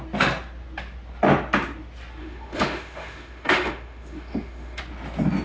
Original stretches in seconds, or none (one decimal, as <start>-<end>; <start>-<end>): 0.0-2.2; 4.8-5.4